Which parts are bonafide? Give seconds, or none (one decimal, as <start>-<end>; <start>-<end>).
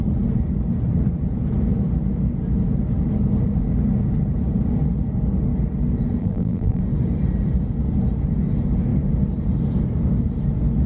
0.0-6.2; 6.8-10.9